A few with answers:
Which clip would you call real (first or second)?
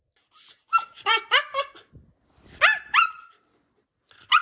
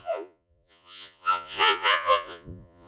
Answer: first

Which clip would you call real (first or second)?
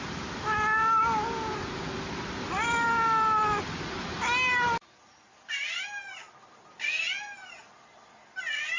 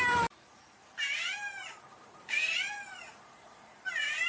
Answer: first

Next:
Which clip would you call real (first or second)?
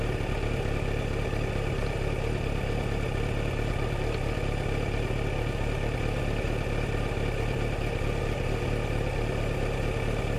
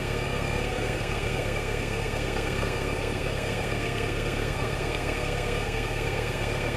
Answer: first